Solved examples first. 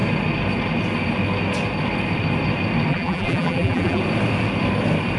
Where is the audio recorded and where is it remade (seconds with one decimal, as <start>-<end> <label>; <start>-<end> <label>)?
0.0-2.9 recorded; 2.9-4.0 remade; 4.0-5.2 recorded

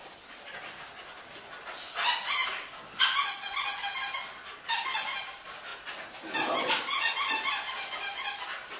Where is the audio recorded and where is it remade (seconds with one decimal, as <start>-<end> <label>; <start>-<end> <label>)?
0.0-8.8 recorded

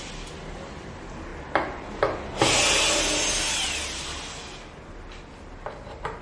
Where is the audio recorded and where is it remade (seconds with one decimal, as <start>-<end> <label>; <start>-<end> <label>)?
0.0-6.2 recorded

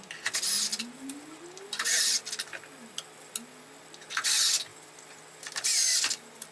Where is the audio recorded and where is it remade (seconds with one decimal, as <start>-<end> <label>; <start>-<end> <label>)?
0.0-0.7 recorded; 0.7-2.1 remade; 2.1-4.7 recorded; 4.7-6.5 remade

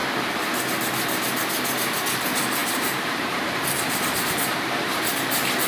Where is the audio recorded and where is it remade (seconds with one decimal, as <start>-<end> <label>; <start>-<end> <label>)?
0.0-2.6 recorded; 2.6-5.0 remade; 5.0-5.7 recorded

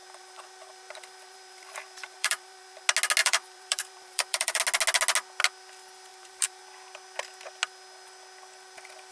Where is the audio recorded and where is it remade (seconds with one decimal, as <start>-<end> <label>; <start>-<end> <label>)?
0.0-2.8 remade; 2.8-3.2 recorded; 3.2-4.6 remade; 4.6-6.1 recorded; 6.1-6.6 remade; 6.6-9.1 recorded

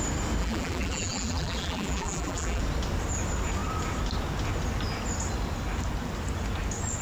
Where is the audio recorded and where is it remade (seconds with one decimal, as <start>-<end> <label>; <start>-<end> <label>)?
0.0-0.4 recorded; 0.4-2.6 remade; 2.6-7.0 recorded